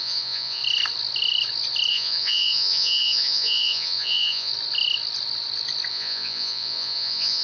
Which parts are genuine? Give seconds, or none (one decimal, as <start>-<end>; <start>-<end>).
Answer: 0.6-1.9; 4.5-5.9